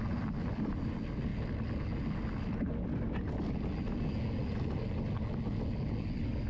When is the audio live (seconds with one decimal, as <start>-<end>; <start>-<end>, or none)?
0.0-6.5